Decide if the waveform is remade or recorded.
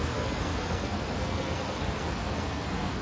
remade